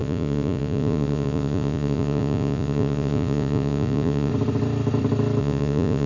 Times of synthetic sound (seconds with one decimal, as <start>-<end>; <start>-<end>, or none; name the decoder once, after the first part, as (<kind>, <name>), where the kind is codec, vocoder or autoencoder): 0.0-4.3 (vocoder, Vocos); 5.4-6.1